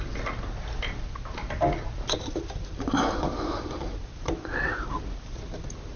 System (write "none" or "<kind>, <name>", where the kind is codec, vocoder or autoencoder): none